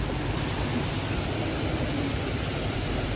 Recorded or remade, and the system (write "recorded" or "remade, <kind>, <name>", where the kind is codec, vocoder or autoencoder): recorded